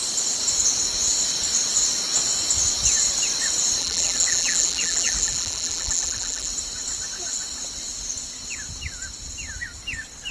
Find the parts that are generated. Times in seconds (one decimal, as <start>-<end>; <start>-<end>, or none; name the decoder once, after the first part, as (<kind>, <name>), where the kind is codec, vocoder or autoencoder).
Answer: 3.8-6.5 (vocoder, BigVGAN v2)